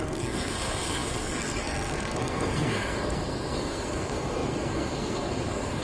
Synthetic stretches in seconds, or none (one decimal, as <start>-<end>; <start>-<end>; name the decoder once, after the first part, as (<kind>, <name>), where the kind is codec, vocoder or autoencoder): 0.0-5.8 (codec, SNAC)